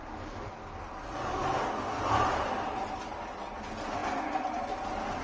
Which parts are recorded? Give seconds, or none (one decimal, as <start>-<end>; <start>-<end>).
0.0-5.2